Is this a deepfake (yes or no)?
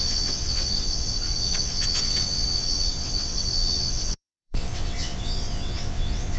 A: yes